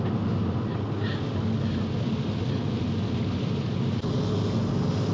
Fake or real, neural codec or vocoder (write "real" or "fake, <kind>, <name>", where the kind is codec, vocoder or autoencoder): real